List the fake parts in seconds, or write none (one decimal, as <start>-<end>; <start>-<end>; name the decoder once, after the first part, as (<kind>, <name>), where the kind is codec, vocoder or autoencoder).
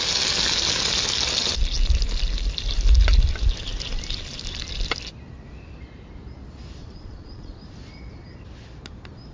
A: 6.8-7.6 (vocoder, Vocos)